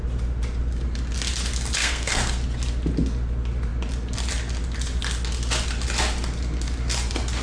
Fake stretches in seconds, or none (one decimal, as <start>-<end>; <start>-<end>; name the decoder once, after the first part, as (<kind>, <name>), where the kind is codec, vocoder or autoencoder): 1.8-2.4 (codec, SNAC)